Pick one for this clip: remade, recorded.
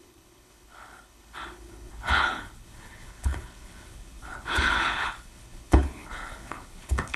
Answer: remade